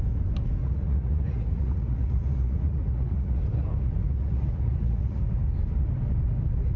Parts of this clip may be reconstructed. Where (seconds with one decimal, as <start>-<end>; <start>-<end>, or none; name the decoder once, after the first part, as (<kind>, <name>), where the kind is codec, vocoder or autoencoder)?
0.6-3.4 (vocoder, Vocos); 4.0-5.2